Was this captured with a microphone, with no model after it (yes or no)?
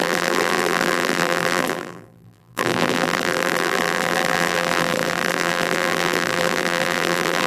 no